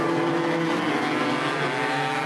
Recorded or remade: recorded